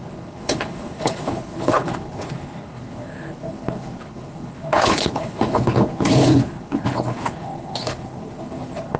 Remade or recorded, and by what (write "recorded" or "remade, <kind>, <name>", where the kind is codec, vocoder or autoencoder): remade, codec, HILCodec